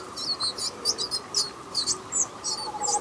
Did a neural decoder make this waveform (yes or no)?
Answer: no